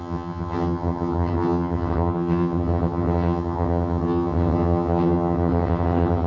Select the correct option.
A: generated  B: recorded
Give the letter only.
A